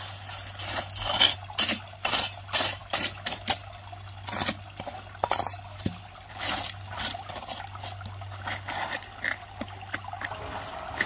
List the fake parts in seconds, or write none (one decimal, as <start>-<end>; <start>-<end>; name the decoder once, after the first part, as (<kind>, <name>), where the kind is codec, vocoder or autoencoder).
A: none